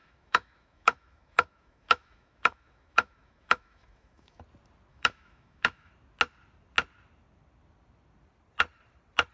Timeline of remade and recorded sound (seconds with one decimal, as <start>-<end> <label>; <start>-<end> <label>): 0.0-4.4 remade; 4.4-4.9 recorded; 4.9-5.9 remade; 5.9-9.3 recorded